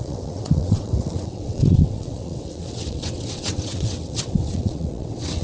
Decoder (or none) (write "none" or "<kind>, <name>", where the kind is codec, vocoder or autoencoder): vocoder, WaveNeXt